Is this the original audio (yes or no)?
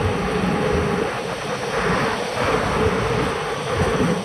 yes